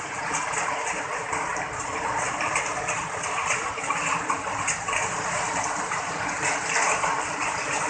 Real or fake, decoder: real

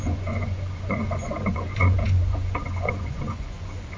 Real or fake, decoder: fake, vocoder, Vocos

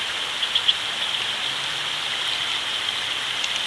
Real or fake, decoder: real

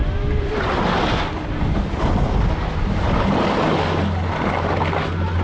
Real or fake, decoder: real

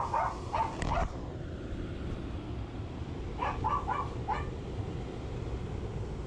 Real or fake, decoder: real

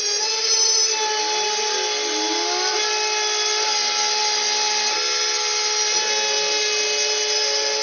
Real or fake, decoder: real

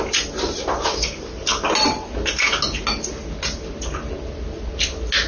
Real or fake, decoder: real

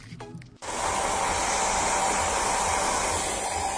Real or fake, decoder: real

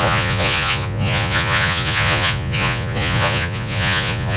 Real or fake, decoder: fake, vocoder, Vocos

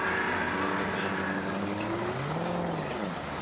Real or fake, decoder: real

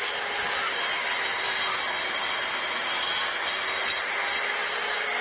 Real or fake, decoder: real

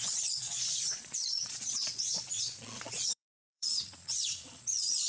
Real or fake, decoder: fake, vocoder, Vocos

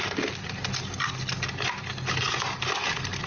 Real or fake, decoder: real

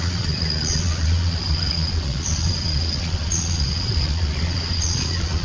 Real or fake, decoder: fake, vocoder, Vocos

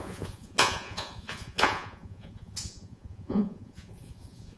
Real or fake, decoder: fake, vocoder, Vocos